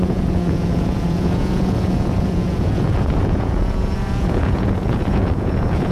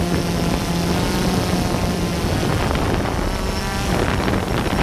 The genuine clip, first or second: second